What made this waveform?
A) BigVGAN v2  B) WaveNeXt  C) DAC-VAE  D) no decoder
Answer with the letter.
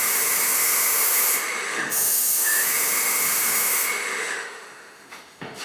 C